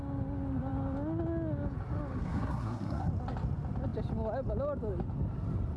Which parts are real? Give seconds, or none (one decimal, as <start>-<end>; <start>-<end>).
0.0-2.2; 3.1-5.8